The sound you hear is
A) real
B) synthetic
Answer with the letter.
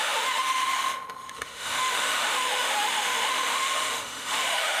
B